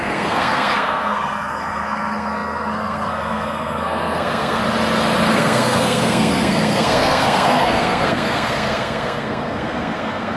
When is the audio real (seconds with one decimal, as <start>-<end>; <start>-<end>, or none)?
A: 4.6-5.3